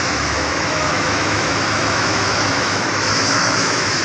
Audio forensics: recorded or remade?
remade